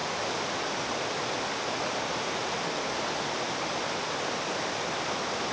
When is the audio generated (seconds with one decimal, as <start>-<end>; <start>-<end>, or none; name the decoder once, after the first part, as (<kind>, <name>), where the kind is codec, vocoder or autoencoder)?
none